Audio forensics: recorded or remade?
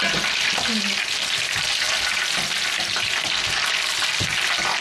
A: recorded